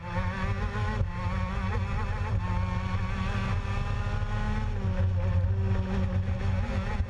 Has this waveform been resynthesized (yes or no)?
no